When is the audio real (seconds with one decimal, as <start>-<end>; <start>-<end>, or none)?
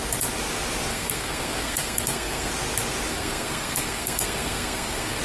0.0-0.9; 2.5-3.1